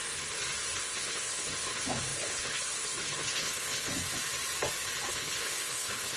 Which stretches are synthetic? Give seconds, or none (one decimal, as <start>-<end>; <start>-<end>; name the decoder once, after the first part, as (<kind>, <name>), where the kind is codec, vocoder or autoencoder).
0.8-3.9 (codec, HILCodec); 5.1-6.2